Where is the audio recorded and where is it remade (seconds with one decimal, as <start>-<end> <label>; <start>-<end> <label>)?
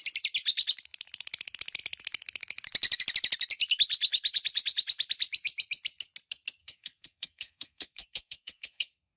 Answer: 0.0-6.6 recorded; 6.6-9.2 remade